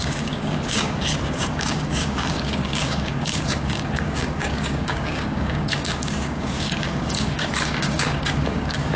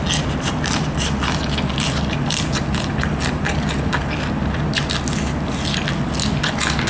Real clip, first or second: second